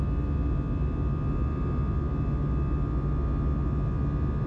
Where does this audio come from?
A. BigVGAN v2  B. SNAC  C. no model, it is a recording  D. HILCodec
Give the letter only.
C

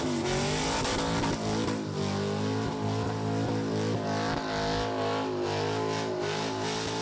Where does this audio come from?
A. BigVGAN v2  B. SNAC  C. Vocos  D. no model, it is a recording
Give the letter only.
D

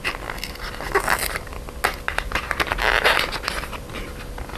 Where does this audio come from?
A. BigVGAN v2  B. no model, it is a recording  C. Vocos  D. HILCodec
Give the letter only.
B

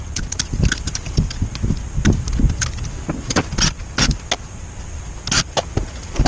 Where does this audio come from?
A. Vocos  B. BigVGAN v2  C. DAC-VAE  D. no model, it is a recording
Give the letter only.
D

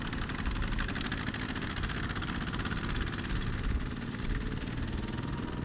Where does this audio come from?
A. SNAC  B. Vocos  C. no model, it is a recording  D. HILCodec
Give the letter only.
C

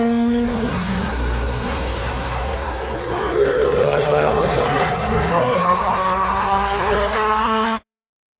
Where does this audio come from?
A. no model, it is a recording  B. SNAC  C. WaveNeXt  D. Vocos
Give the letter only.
B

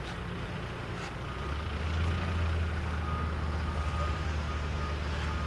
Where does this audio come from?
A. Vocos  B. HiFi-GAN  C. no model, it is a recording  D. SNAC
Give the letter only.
C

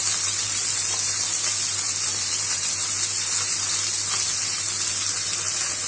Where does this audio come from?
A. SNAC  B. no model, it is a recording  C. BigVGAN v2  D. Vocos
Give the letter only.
B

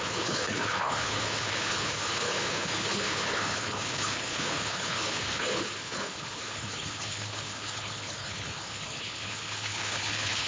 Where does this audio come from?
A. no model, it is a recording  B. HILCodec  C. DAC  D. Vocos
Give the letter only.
B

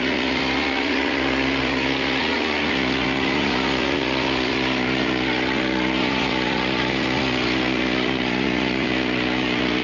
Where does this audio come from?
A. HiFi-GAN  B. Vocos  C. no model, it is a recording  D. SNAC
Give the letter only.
B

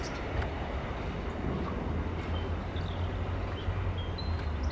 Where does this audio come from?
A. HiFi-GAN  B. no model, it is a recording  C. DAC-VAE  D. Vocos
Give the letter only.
B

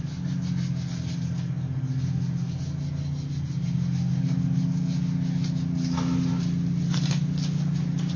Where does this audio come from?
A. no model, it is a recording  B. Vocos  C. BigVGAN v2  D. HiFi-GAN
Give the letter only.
A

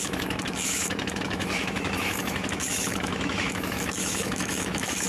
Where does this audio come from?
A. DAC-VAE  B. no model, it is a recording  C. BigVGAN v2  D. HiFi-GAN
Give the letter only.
A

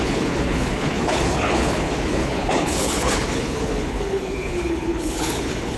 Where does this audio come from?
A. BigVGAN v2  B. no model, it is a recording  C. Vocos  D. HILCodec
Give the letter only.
D